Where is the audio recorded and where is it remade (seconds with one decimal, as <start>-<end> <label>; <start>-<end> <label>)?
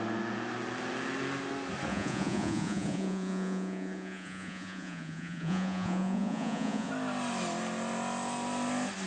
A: 0.0-1.9 recorded; 1.9-6.9 remade; 6.9-9.1 recorded